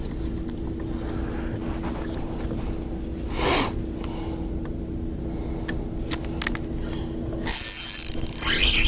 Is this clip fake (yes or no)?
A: no